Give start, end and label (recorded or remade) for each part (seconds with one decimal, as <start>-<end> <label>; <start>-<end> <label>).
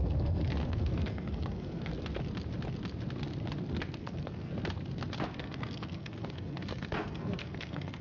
0.0-1.9 remade; 1.9-4.0 recorded; 4.0-4.5 remade; 4.5-5.4 recorded; 5.4-8.0 remade